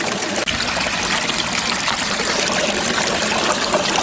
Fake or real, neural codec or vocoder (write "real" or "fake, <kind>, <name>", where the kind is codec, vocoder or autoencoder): real